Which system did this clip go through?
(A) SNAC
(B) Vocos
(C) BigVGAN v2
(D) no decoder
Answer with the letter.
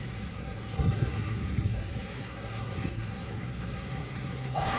A